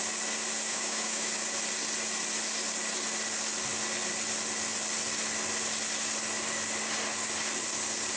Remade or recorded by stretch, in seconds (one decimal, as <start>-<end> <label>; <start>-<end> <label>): 0.0-0.7 recorded; 0.7-1.3 remade; 1.3-8.2 recorded